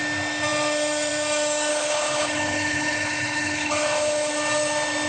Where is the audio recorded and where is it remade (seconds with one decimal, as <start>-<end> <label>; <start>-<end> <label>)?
0.0-1.7 recorded; 1.7-4.3 remade; 4.3-5.1 recorded